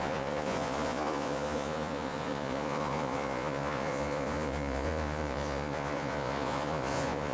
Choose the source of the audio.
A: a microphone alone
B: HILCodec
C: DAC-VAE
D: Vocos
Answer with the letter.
D